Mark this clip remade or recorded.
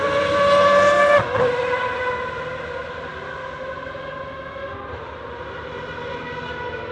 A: recorded